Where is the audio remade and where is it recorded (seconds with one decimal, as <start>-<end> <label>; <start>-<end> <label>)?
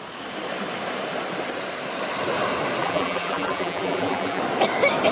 0.0-2.8 recorded; 2.8-4.4 remade; 4.4-5.1 recorded